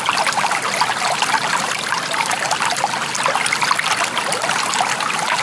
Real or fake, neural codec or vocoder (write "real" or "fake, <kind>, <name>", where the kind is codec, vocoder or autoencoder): real